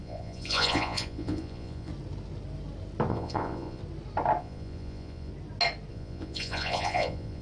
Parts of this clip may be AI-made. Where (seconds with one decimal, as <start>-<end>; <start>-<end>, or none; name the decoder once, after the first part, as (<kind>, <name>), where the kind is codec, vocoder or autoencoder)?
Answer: 0.0-1.9 (vocoder, Vocos); 3.1-3.8; 4.4-5.3; 5.9-7.4